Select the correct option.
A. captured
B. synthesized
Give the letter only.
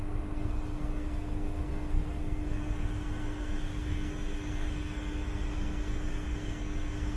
B